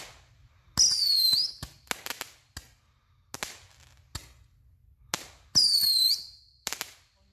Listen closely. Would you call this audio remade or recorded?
recorded